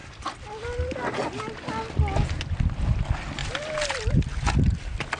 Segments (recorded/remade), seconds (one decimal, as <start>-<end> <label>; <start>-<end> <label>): 0.0-5.2 recorded